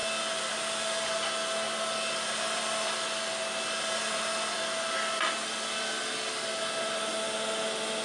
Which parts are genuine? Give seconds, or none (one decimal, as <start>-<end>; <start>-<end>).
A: 0.0-8.0